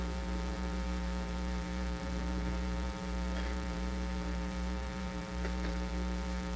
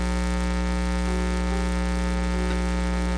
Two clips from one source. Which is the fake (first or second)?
first